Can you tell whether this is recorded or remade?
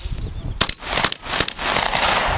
recorded